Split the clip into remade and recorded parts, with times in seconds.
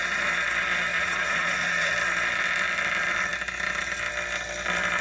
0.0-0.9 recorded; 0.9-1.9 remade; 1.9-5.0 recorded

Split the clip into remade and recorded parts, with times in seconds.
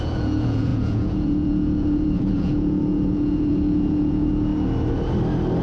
0.0-4.5 remade; 4.5-5.6 recorded